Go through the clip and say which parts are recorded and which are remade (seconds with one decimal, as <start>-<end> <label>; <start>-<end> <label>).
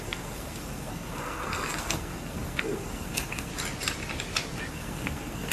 0.0-3.5 remade; 3.5-4.7 recorded; 4.7-5.5 remade